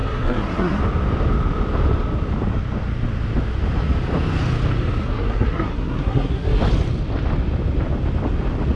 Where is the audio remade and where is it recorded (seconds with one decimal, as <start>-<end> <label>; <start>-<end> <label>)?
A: 0.0-0.8 remade; 0.8-5.0 recorded; 5.0-6.6 remade; 6.6-8.8 recorded